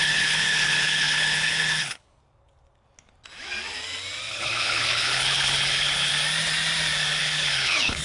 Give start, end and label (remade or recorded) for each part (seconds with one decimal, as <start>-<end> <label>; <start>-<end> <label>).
0.0-2.2 remade; 2.2-4.3 recorded; 4.3-6.1 remade; 6.1-7.2 recorded; 7.2-8.0 remade